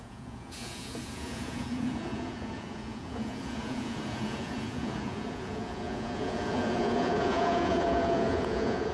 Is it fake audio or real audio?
fake